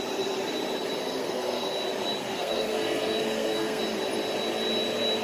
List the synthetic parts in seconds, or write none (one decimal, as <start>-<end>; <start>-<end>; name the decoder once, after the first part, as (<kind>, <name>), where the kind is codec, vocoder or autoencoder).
1.2-1.7 (codec, SNAC); 2.2-3.8